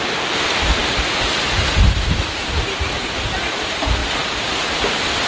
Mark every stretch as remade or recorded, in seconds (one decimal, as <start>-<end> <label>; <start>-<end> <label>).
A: 0.0-3.0 remade; 3.0-3.6 recorded; 3.6-5.3 remade